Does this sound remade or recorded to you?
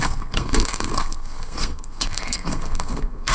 remade